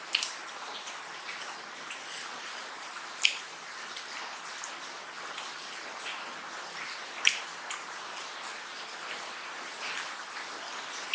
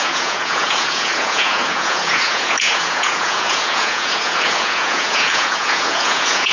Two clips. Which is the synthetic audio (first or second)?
second